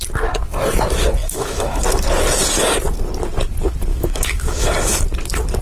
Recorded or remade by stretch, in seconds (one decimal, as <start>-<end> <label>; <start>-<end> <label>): 0.0-1.2 recorded; 1.2-1.8 remade; 1.8-3.9 recorded; 3.9-4.7 remade; 4.7-5.6 recorded